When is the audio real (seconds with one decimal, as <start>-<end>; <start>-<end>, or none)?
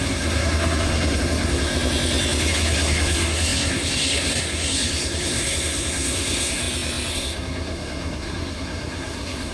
1.7-2.5; 6.6-7.1